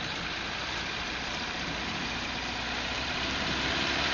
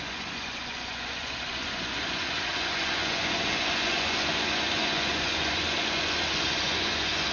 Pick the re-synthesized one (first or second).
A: second